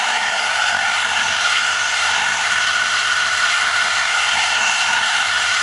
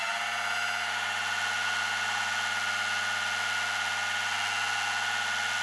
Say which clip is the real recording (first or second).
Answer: second